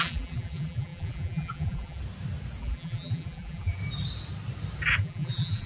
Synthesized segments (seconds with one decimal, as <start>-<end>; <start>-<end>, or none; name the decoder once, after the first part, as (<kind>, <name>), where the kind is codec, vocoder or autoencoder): 0.0-2.0 (vocoder, BigVGAN v2); 2.6-3.8; 5.0-5.7